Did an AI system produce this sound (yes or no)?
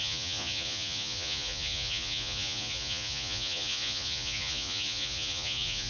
yes